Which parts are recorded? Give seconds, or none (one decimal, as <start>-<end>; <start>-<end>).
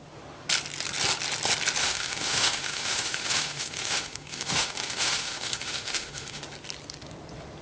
0.0-1.8; 6.4-7.6